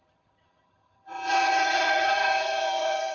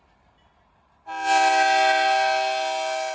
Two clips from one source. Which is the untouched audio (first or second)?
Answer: second